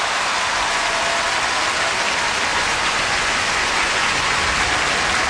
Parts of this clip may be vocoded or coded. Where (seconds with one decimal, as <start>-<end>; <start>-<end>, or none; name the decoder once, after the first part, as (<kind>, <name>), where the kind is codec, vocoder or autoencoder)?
0.5-1.0 (vocoder, Vocos); 2.5-4.4